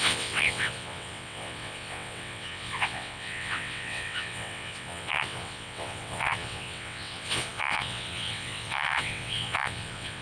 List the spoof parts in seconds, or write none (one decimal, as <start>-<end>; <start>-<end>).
0.0-10.2